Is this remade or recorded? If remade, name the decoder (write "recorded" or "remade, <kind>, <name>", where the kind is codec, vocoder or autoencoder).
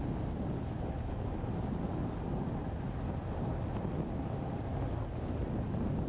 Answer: recorded